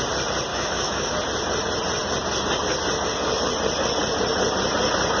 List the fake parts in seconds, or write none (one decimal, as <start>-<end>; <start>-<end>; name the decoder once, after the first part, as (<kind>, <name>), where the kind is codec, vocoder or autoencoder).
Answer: 0.5-1.1 (autoencoder, DAC-VAE)